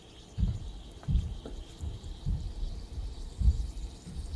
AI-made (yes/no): no